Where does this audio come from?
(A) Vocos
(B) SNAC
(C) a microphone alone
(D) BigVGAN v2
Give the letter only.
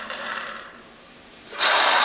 D